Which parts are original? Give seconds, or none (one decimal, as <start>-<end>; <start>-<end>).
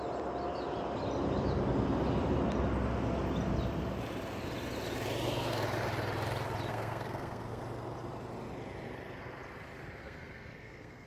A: 0.0-6.7; 7.6-10.0